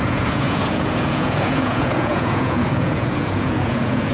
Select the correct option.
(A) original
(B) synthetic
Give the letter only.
B